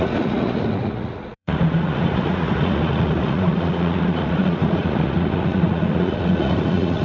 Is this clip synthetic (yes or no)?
yes